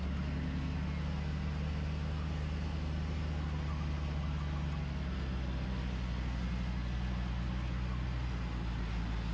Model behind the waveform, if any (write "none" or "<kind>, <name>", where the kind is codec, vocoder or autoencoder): none